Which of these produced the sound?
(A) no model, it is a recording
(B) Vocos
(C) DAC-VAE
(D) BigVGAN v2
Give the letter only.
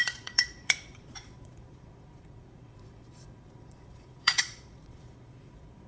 B